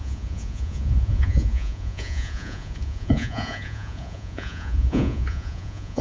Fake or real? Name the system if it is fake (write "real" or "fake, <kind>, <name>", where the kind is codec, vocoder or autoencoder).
fake, vocoder, Vocos